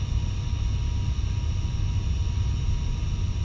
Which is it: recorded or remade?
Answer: recorded